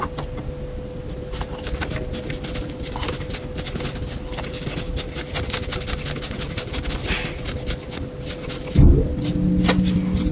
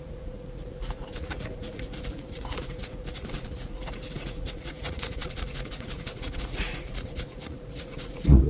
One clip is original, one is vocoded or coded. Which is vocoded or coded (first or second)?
second